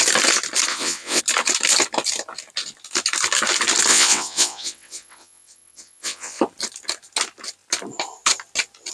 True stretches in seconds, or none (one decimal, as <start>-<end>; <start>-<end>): 0.0-0.7; 1.2-3.9; 6.4-8.9